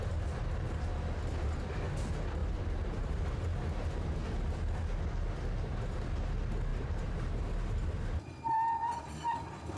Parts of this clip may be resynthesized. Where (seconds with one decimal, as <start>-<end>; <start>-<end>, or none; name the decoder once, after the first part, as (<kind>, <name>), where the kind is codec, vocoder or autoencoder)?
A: 2.4-3.2 (vocoder, BigVGAN v2); 6.7-7.4